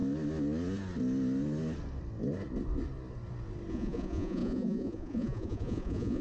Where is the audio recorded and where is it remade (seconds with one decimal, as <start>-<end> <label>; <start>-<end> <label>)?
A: 0.0-3.7 recorded; 3.7-6.2 remade